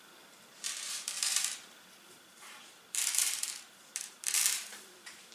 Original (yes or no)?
no